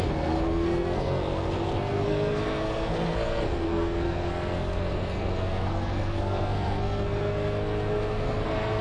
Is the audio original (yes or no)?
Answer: no